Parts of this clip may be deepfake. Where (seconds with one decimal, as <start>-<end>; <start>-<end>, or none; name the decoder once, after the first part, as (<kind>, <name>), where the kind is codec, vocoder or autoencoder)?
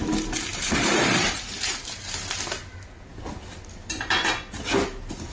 0.5-1.7 (vocoder, BigVGAN v2)